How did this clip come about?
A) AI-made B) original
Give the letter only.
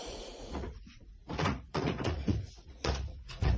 A